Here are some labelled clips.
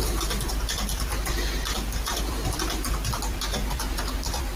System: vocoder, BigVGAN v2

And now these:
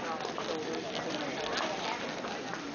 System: none